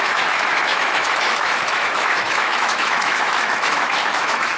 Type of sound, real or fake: fake